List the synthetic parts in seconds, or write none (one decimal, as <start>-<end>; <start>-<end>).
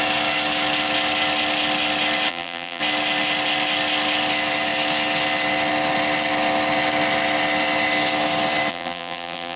2.3-2.8; 8.7-9.6